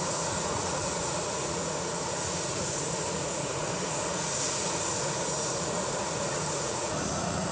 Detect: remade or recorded remade